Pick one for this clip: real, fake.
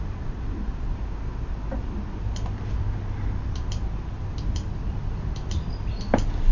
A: real